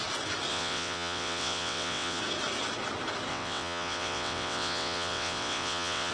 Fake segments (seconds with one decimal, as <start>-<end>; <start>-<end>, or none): 0.5-2.2; 3.3-6.1

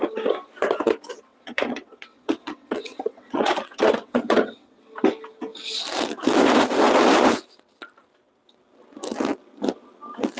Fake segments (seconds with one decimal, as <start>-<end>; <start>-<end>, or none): 1.3-4.8

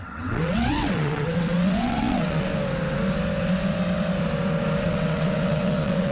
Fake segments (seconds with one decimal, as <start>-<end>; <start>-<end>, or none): 0.0-2.5; 4.8-6.1

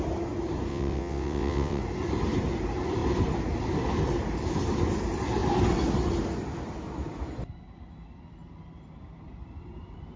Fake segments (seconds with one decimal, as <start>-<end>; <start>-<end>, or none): 0.7-1.8

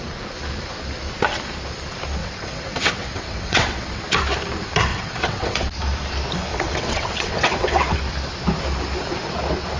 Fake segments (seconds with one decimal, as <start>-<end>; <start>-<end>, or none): 2.2-4.0; 4.9-5.7; 6.5-8.0

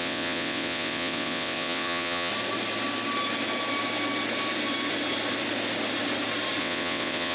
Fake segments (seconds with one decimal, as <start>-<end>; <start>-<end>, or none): 0.0-2.3; 6.6-7.3

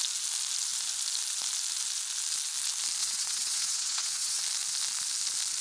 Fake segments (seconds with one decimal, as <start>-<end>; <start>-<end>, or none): 3.0-4.4

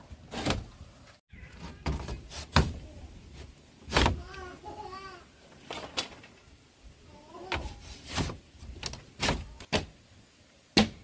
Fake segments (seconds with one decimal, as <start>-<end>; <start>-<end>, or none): none